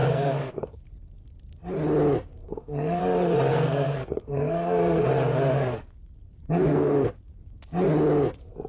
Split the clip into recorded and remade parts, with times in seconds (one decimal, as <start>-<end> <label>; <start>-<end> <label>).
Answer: 0.0-0.8 remade; 0.8-2.4 recorded; 2.4-3.0 remade; 3.0-3.5 recorded; 3.5-5.1 remade; 5.1-6.4 recorded; 6.4-7.1 remade; 7.1-8.7 recorded